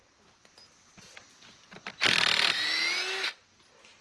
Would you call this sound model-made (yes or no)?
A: no